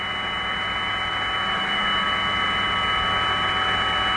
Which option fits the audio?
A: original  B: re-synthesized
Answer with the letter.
A